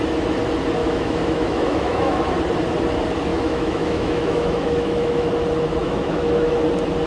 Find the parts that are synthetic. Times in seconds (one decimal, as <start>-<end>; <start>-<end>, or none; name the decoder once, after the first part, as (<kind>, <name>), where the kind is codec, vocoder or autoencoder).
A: 0.8-2.2 (autoencoder, DAC-VAE); 3.3-5.3; 5.8-6.5